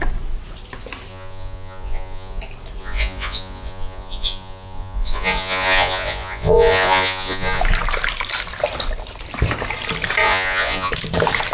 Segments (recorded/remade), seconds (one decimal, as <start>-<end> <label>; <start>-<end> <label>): 0.0-1.1 recorded; 1.1-2.4 remade; 2.4-2.8 recorded; 2.8-7.6 remade; 7.6-10.2 recorded; 10.2-10.9 remade; 10.9-11.5 recorded